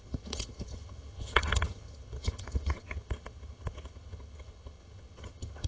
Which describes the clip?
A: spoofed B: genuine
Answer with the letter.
A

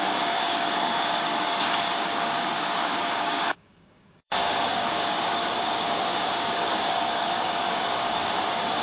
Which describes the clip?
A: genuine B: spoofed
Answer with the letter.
B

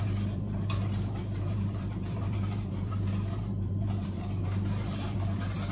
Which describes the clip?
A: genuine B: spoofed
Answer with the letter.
B